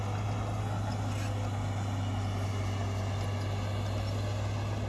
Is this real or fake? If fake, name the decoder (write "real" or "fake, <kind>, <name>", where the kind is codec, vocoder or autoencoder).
real